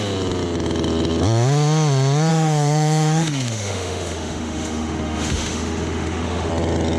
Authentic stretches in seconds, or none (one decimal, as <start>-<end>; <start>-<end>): 0.0-2.3; 6.5-7.0